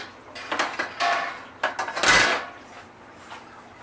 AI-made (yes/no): no